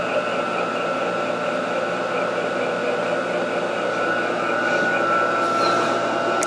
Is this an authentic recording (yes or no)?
yes